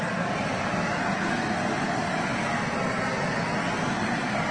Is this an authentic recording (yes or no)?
yes